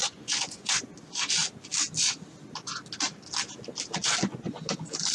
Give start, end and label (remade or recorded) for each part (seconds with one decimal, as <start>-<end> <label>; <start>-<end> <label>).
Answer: 0.0-0.8 remade; 0.8-5.1 recorded